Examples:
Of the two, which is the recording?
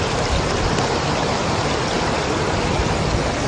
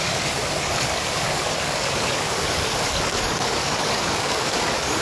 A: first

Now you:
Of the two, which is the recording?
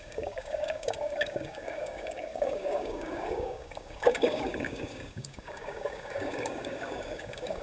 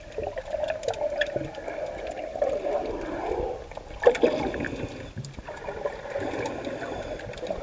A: second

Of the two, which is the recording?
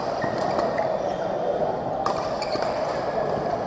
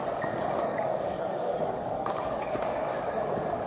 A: first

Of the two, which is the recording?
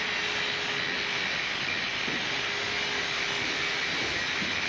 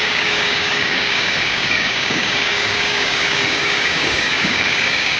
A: first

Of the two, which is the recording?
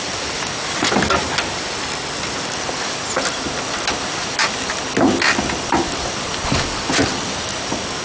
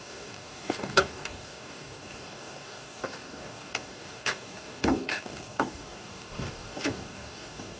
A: first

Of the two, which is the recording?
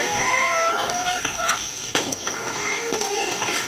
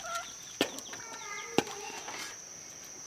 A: second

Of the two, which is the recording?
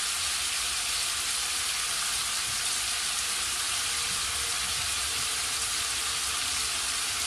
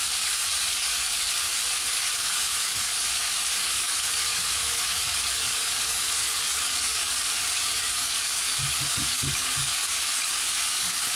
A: first